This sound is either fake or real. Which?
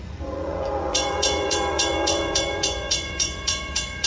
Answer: fake